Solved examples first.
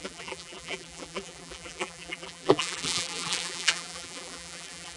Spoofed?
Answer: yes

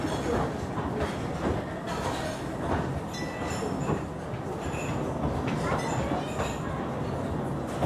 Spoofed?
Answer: no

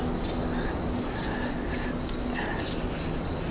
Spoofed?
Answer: no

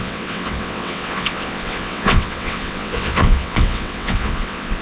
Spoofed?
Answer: yes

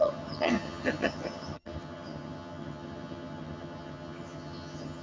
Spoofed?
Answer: yes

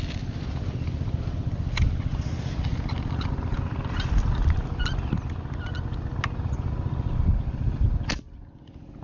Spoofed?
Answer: no